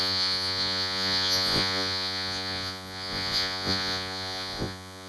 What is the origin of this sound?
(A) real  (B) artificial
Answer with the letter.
B